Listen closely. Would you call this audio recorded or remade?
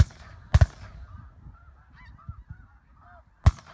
recorded